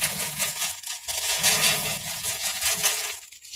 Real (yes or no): no